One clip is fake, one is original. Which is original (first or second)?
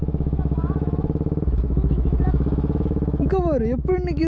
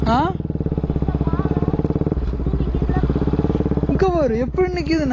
second